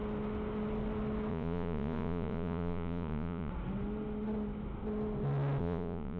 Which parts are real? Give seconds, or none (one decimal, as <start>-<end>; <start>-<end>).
0.0-1.3; 3.5-5.6